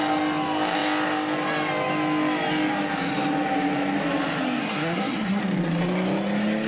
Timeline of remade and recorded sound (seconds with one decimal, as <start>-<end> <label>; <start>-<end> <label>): 0.0-4.6 recorded; 4.6-5.4 remade; 5.4-6.7 recorded